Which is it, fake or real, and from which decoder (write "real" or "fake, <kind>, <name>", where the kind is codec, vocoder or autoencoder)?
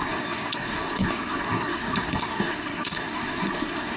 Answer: fake, codec, SNAC